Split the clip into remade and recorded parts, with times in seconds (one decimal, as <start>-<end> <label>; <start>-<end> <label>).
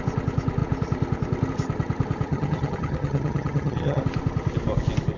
0.0-2.3 recorded; 2.3-4.0 remade; 4.0-5.2 recorded